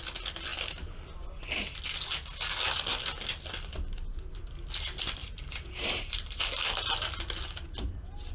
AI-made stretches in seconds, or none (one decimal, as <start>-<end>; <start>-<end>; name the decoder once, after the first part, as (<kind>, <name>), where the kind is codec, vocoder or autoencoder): 5.2-6.4 (vocoder, BigVGAN v2)